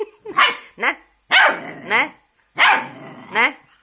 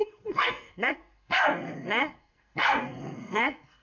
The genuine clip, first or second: first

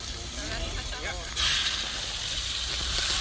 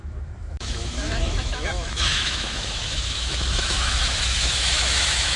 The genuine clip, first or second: first